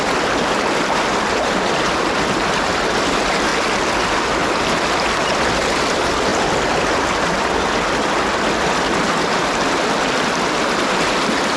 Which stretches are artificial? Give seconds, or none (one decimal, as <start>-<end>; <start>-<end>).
0.0-3.5; 4.6-6.3; 8.0-11.6